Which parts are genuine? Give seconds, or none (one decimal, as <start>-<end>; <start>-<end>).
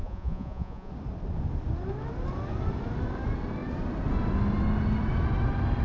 0.9-5.8